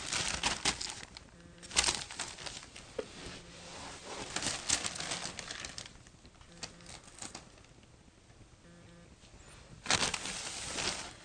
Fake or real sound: real